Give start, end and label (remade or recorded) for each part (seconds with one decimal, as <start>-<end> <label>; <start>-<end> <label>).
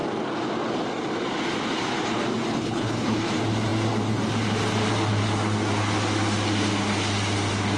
0.0-2.5 recorded; 2.5-3.3 remade; 3.3-7.8 recorded